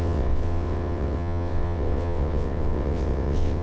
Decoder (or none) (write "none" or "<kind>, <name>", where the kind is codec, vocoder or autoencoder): vocoder, WaveNeXt